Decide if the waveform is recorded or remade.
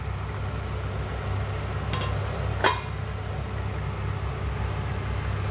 recorded